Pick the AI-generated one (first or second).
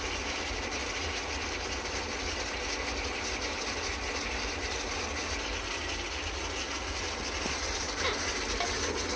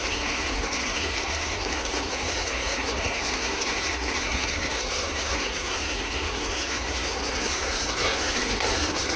second